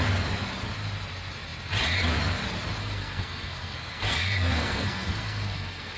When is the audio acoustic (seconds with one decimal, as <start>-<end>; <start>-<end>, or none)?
0.0-2.8